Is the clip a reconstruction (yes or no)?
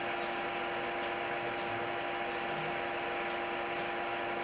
no